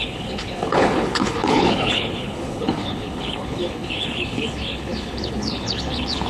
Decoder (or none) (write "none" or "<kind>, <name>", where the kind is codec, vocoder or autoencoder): codec, HILCodec